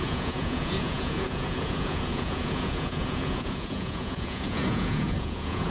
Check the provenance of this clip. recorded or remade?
remade